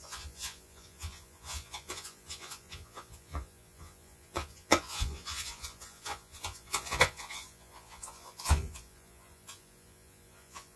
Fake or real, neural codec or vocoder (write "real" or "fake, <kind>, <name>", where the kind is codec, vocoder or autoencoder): fake, vocoder, Vocos